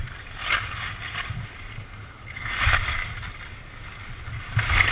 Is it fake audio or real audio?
real